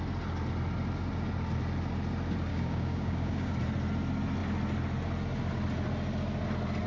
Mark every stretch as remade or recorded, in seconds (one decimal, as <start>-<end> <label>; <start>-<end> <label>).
0.0-2.5 recorded; 2.5-3.6 remade; 3.6-6.9 recorded

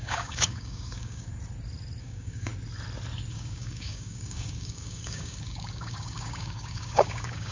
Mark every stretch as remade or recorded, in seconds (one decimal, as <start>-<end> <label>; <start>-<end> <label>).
0.0-1.3 remade; 1.3-2.0 recorded; 2.0-2.5 remade; 2.5-3.3 recorded; 3.3-7.5 remade

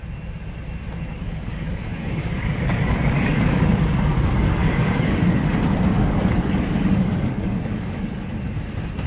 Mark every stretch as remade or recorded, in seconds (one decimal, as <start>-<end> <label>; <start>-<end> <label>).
0.0-1.1 recorded; 1.1-4.1 remade; 4.1-4.6 recorded; 4.6-5.4 remade; 5.4-5.9 recorded; 5.9-8.3 remade; 8.3-9.1 recorded